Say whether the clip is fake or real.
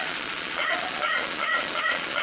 fake